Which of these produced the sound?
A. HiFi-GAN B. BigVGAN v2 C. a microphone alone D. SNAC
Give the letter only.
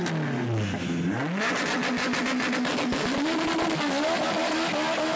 C